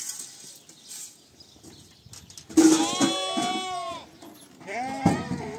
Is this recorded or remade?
recorded